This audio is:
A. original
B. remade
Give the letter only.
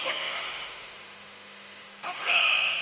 B